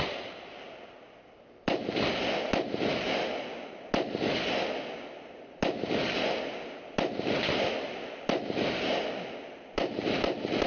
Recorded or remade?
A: recorded